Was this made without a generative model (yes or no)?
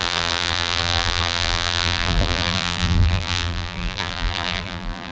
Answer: no